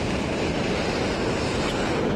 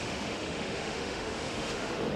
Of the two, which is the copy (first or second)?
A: second